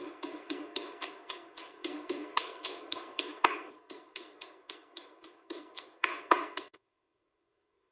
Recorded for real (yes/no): no